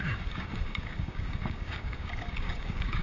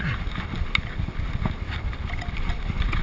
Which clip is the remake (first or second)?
first